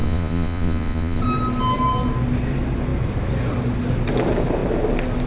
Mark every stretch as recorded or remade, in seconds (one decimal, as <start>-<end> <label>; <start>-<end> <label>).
0.0-1.2 remade; 1.2-5.3 recorded